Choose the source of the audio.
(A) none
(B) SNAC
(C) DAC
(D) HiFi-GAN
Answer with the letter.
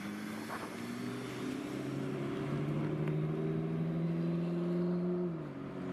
A